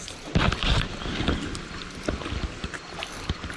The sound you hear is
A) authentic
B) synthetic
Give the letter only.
A